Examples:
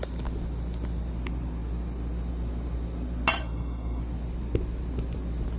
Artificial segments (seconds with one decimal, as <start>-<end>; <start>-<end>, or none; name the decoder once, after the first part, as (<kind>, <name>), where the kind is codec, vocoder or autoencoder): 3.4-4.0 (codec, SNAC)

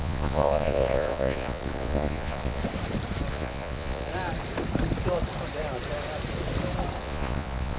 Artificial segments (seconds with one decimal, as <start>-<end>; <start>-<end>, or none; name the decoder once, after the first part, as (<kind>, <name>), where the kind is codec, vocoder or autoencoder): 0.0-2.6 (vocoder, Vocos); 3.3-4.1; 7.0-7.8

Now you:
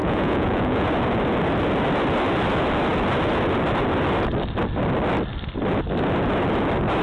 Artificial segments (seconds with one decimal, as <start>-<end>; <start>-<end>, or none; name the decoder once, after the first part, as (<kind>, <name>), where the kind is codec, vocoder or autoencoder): 0.0-0.9 (vocoder, Vocos)